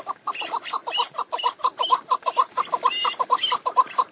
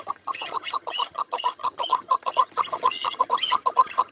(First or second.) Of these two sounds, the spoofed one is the second